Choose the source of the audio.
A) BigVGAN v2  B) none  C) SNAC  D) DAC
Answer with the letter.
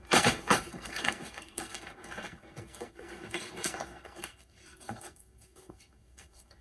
C